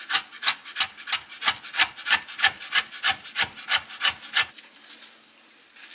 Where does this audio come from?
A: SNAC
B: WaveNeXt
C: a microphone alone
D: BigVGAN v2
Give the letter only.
C